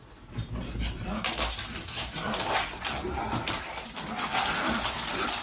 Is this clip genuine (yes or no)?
yes